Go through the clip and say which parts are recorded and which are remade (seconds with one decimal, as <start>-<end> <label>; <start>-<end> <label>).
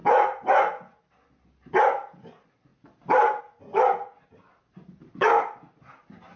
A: 0.0-6.4 recorded